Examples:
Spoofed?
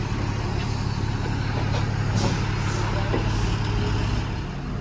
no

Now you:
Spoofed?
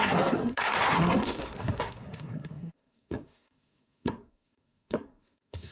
yes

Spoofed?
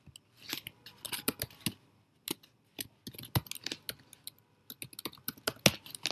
no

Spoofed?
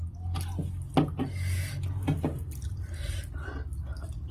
no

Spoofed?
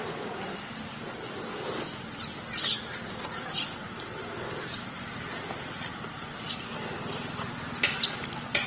no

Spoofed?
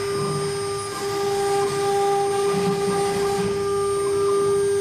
no